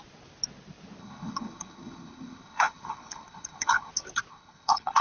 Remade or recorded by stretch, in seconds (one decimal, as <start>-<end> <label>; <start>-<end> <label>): 0.0-1.0 recorded; 1.0-3.9 remade; 3.9-4.3 recorded; 4.3-5.0 remade